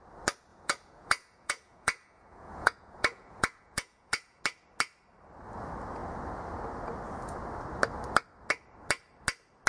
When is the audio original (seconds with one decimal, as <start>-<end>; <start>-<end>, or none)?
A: 0.0-0.5; 4.4-9.7